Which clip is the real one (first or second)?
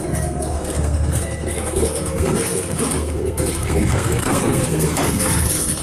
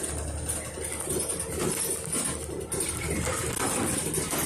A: second